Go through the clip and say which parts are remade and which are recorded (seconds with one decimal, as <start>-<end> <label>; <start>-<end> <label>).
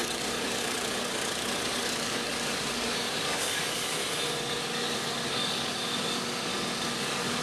0.0-4.0 remade; 4.0-4.6 recorded; 4.6-6.5 remade; 6.5-7.0 recorded; 7.0-7.4 remade